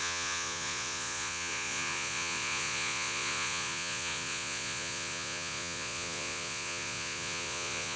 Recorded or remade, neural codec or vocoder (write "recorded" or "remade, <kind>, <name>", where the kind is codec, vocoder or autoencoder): remade, vocoder, Vocos